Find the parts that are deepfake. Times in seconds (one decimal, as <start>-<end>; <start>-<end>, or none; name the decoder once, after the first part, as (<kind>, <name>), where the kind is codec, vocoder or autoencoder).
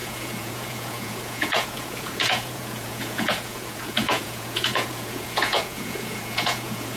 0.0-7.0 (vocoder, Vocos)